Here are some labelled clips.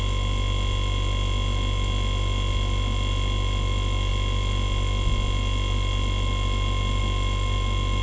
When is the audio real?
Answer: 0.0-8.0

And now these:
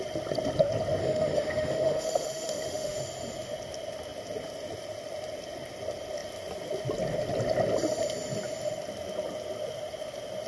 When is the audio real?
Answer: 0.0-1.0; 3.0-10.5

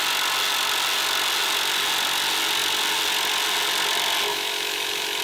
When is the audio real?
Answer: 0.0-4.3

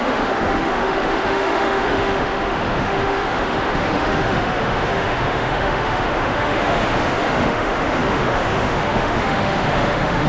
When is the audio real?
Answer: none

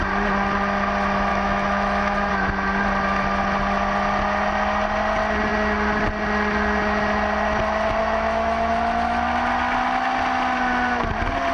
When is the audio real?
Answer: 0.0-1.3; 2.3-8.0; 8.7-11.5

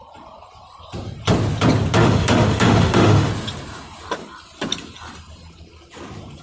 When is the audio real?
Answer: 0.0-2.0; 3.3-6.4

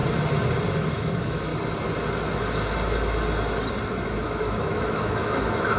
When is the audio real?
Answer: 0.0-0.9; 1.5-3.9

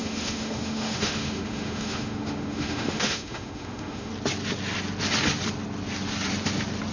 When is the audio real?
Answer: 4.1-6.9